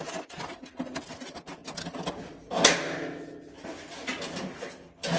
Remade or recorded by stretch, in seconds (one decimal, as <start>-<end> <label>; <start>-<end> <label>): 0.0-5.2 recorded